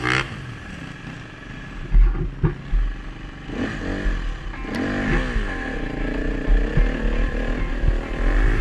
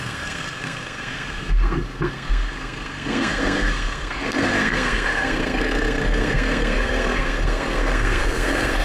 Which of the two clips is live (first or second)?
first